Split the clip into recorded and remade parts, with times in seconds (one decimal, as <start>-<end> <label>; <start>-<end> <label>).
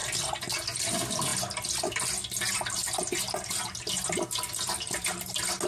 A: 0.0-5.7 recorded